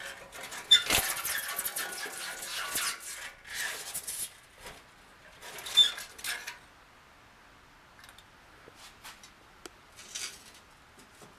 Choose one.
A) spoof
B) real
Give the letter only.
B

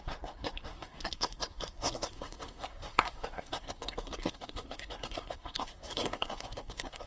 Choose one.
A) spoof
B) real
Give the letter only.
A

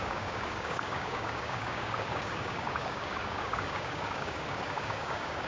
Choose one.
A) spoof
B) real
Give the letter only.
A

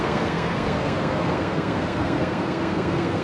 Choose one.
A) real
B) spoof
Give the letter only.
B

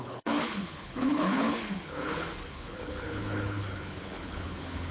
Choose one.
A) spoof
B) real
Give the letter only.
A